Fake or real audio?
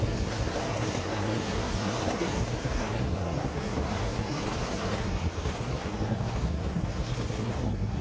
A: fake